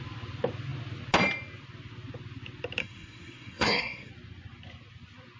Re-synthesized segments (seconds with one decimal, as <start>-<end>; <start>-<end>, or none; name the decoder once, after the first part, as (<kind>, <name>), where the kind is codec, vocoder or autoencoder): 2.8-4.1 (codec, SNAC)